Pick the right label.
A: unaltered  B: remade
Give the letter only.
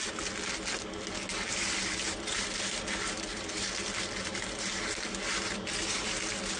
A